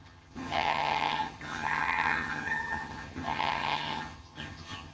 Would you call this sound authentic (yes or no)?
no